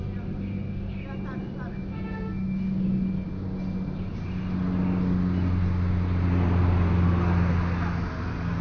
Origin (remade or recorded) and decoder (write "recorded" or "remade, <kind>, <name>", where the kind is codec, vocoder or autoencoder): recorded